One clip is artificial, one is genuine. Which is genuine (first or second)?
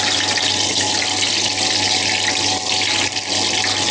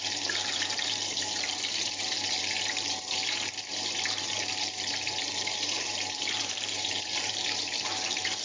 first